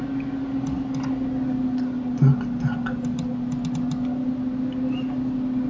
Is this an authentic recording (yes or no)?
yes